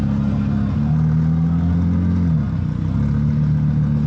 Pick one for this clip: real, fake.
real